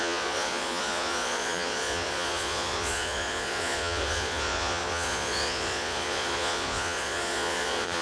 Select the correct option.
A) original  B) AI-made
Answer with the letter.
B